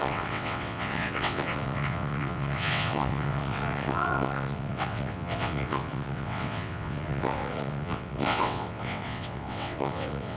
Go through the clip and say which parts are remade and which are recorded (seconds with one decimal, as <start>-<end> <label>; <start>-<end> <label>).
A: 0.0-10.4 remade